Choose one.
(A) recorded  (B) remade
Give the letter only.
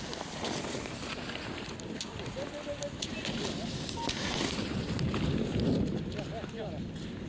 A